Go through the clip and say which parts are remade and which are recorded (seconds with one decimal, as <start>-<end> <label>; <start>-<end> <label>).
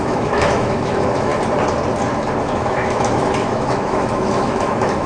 0.0-1.3 remade; 1.3-2.4 recorded; 2.4-5.1 remade